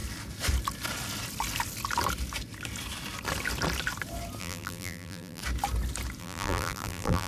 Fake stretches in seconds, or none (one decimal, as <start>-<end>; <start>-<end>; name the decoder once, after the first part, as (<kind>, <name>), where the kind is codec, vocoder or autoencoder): 4.4-5.4 (vocoder, BigVGAN v2); 6.2-7.3